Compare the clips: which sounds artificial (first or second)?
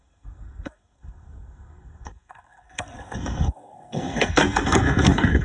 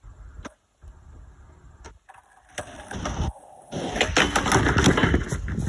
first